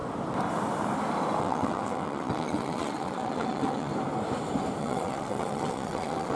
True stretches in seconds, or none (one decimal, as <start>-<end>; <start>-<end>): 0.0-1.4; 3.9-4.8